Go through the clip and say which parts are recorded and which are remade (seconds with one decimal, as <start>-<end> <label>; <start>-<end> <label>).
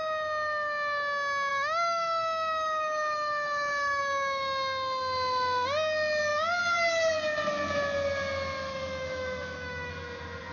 0.0-1.5 recorded; 1.5-4.0 remade; 4.0-8.7 recorded; 8.7-9.9 remade; 9.9-10.5 recorded